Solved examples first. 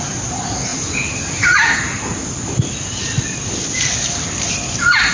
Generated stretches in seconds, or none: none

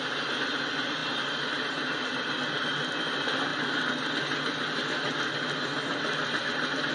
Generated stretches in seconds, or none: none

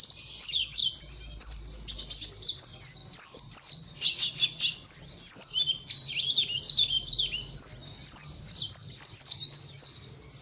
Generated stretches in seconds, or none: none